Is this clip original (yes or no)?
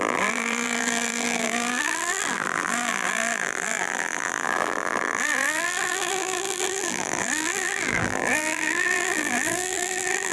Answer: no